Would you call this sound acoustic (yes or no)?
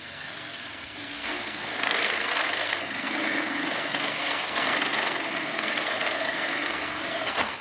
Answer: no